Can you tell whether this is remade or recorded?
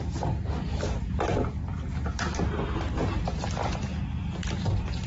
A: recorded